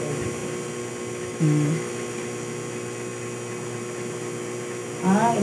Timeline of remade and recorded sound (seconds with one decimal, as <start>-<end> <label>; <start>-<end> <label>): 0.0-1.3 recorded; 1.3-1.9 remade; 1.9-5.4 recorded